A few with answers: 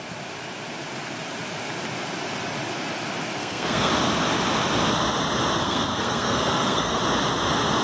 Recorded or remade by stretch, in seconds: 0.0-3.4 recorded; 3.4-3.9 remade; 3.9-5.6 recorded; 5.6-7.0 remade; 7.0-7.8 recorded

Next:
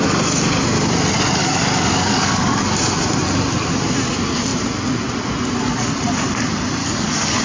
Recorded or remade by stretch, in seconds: 0.0-1.4 recorded; 1.4-2.6 remade; 2.6-6.8 recorded; 6.8-7.4 remade

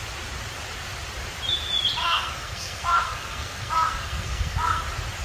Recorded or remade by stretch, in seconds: 0.0-2.0 recorded; 2.0-4.8 remade; 4.8-5.2 recorded

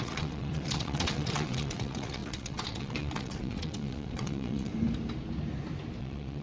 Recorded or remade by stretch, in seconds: 0.0-4.7 remade; 4.7-6.0 recorded; 6.0-6.4 remade

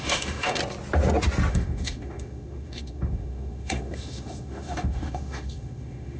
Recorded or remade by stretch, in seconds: 0.0-0.6 remade; 0.6-1.5 recorded; 1.5-6.2 remade

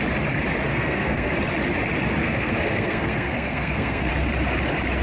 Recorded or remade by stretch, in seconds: 0.0-0.7 recorded; 0.7-1.3 remade; 1.3-2.2 recorded; 2.2-4.1 remade; 4.1-5.0 recorded

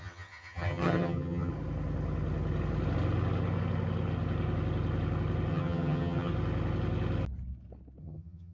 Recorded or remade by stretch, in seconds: 0.0-1.5 remade; 1.5-5.5 recorded; 5.5-6.3 remade; 6.3-8.0 recorded; 8.0-8.5 remade

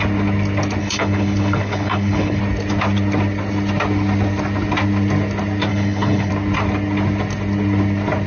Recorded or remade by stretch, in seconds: 0.0-0.8 recorded; 0.8-2.4 remade; 2.4-5.7 recorded; 5.7-6.3 remade; 6.3-8.3 recorded